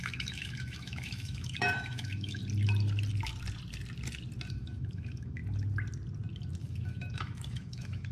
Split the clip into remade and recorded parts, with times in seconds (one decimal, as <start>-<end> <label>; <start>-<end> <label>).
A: 0.0-2.4 remade; 2.4-4.5 recorded; 4.5-5.4 remade; 5.4-6.6 recorded; 6.6-8.1 remade